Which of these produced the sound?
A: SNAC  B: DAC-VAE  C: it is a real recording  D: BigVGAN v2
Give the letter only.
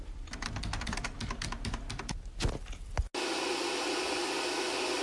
C